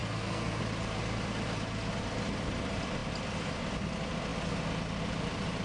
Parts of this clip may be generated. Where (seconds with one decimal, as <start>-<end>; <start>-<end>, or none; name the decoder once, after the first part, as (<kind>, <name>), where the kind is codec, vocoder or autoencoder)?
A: 0.0-0.6 (codec, SNAC)